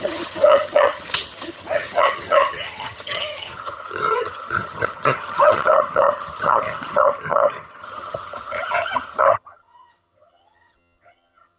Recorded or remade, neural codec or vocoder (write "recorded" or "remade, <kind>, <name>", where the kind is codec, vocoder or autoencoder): remade, vocoder, HiFi-GAN